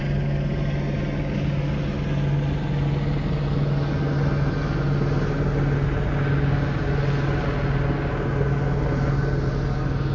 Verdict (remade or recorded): recorded